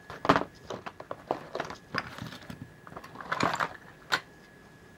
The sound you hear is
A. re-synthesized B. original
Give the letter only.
B